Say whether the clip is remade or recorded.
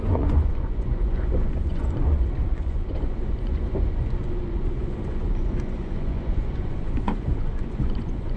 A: remade